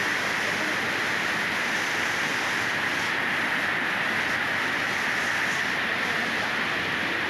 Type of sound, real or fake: real